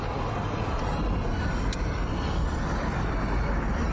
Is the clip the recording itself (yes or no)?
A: yes